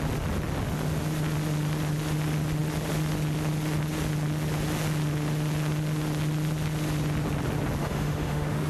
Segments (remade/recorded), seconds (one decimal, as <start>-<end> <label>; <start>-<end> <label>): 0.0-7.8 recorded; 7.8-8.7 remade